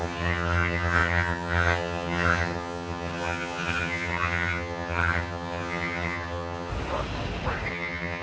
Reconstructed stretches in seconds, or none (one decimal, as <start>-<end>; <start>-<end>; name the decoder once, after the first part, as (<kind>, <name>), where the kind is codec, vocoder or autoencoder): 0.0-6.7 (vocoder, HiFi-GAN); 7.7-8.2